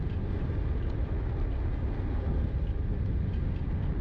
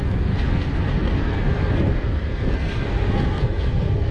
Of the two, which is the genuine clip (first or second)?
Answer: first